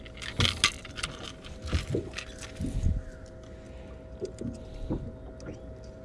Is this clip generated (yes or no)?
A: no